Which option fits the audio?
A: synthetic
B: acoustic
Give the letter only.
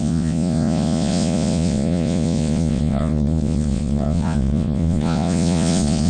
A